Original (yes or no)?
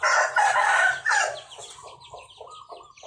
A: yes